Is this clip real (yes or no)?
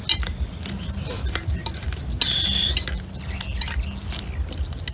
yes